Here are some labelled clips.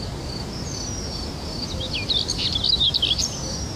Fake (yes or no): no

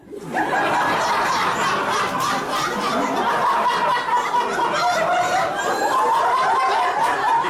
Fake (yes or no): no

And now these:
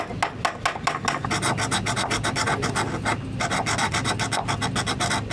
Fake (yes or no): no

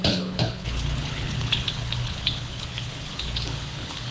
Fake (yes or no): yes